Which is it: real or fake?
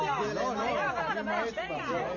real